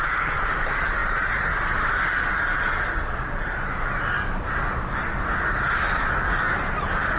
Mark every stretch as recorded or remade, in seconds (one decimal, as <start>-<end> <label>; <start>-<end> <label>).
0.0-7.2 recorded